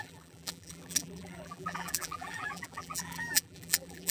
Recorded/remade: remade